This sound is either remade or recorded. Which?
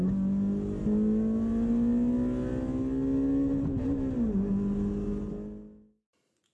recorded